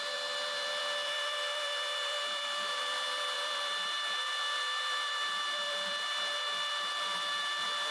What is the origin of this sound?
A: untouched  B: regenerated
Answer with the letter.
B